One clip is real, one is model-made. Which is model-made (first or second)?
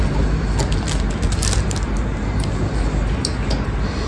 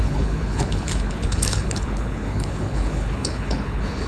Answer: second